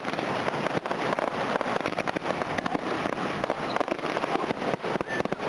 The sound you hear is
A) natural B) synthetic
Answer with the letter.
A